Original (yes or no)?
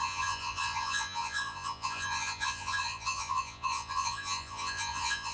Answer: no